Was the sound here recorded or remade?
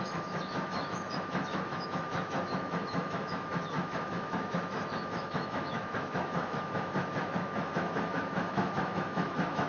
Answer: remade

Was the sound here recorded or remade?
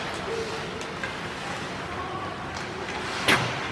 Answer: recorded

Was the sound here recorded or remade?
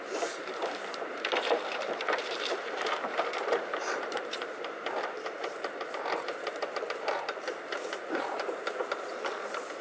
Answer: remade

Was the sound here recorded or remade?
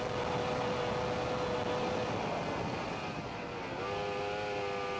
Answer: recorded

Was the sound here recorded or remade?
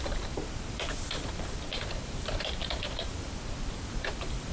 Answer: remade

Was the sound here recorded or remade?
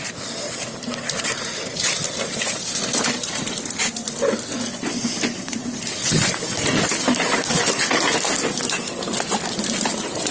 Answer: recorded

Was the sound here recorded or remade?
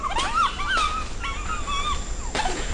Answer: recorded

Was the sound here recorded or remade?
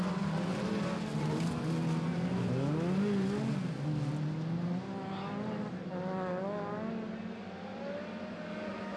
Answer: recorded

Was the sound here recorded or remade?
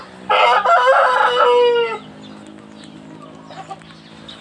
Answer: recorded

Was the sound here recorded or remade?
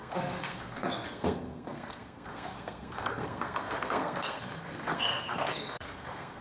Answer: remade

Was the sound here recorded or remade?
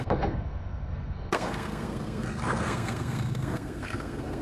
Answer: remade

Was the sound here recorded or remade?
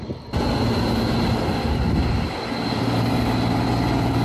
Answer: recorded